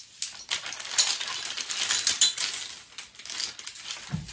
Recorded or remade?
recorded